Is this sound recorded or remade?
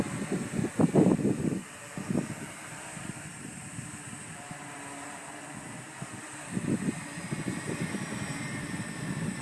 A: recorded